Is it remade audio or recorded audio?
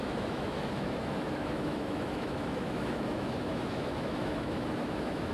remade